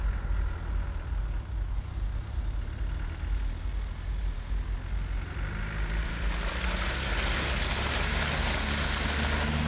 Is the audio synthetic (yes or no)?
no